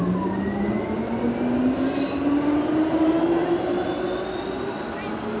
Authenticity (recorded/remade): recorded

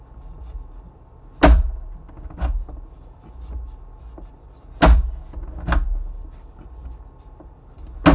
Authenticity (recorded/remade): recorded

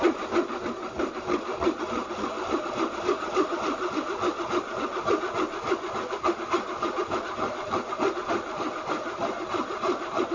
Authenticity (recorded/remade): recorded